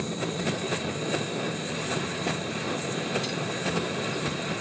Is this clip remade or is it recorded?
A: recorded